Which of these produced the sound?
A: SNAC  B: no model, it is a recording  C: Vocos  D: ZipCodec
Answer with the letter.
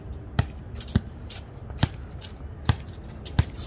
B